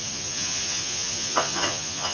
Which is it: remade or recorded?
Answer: remade